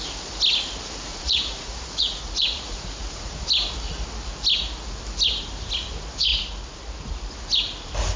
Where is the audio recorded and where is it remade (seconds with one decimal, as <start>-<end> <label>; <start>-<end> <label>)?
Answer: 0.0-1.1 recorded; 1.1-3.3 remade; 3.3-8.2 recorded